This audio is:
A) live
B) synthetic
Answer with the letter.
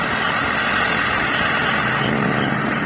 A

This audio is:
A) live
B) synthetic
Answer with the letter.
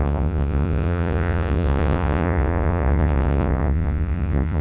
B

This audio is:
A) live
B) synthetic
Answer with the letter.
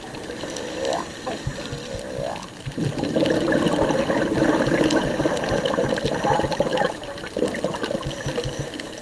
A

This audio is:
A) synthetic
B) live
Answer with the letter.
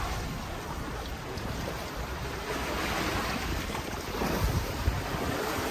B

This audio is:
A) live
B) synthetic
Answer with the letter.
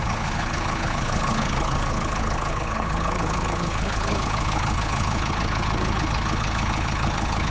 B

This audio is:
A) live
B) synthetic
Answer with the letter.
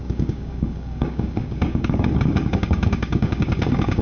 B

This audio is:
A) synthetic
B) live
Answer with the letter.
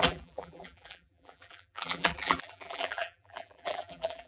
A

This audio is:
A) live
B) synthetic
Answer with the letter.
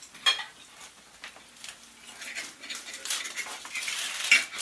A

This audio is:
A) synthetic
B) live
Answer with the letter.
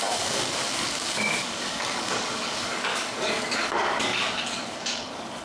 A